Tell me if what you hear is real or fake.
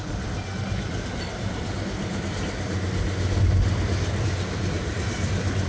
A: real